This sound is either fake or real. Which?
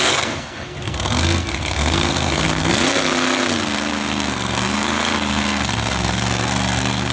fake